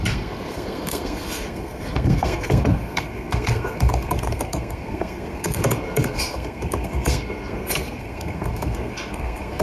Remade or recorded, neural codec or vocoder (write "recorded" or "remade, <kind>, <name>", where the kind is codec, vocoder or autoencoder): remade, codec, SNAC